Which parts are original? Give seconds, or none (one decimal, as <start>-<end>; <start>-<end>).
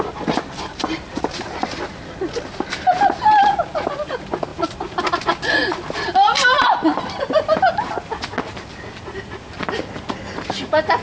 0.0-11.0